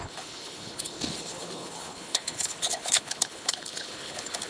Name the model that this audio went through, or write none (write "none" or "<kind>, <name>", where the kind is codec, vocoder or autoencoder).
codec, HILCodec